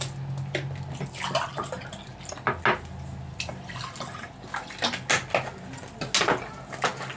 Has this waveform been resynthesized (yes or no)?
no